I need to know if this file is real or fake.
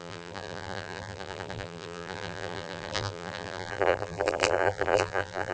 fake